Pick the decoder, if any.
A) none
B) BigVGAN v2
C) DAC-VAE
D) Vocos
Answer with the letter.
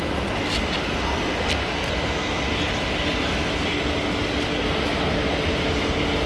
A